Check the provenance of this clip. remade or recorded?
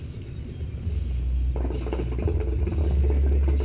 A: recorded